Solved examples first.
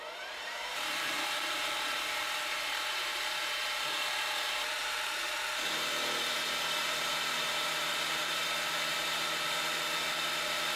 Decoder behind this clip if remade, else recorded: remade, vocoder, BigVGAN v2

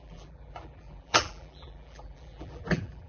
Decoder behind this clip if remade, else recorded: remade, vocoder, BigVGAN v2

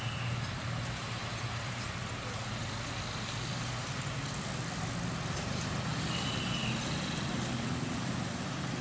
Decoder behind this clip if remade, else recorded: recorded